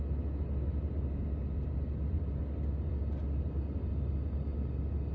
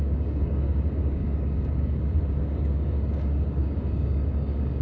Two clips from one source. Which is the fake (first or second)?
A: second